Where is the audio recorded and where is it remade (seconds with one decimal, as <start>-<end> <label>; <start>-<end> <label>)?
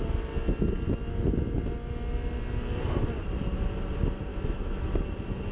0.0-4.3 recorded; 4.3-4.9 remade; 4.9-5.5 recorded